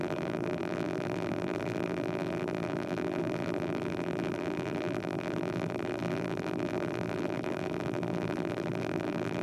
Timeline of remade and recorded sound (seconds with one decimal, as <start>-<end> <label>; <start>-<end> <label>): 0.0-9.4 remade